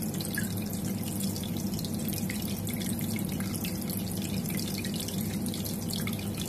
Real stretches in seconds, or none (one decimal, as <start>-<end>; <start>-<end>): 0.0-6.5